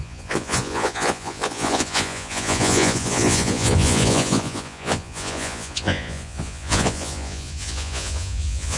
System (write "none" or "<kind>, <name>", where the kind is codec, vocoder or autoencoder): vocoder, Vocos